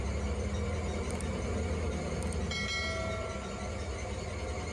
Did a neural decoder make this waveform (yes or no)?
no